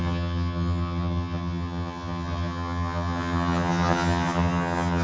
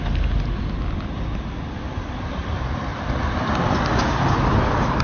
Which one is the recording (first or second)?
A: second